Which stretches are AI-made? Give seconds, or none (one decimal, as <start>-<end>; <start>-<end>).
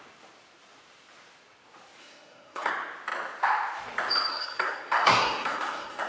2.0-2.7; 4.3-6.1